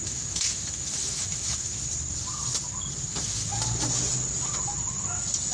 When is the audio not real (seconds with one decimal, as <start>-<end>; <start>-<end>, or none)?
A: 0.0-1.7; 3.1-3.5